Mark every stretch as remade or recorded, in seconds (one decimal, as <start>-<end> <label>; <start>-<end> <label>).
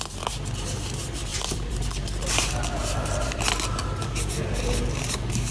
0.0-1.3 recorded; 1.3-3.4 remade; 3.4-5.5 recorded